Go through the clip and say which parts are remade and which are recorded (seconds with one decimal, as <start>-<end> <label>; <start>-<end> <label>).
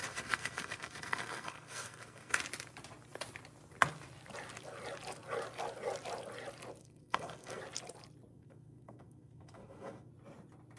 0.0-2.4 remade; 2.4-6.8 recorded; 6.8-7.6 remade; 7.6-8.3 recorded; 8.3-10.1 remade; 10.1-10.8 recorded